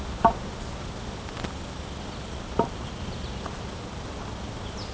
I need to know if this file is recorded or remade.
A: recorded